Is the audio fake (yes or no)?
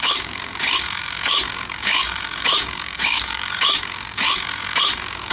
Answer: yes